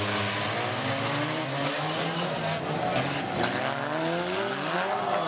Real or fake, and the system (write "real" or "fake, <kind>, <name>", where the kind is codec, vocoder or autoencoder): real